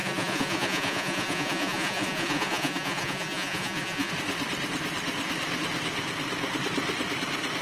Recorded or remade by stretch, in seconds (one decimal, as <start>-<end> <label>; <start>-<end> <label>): 0.0-4.1 remade; 4.1-7.6 recorded